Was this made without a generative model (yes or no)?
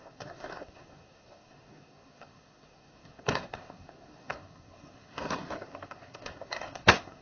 no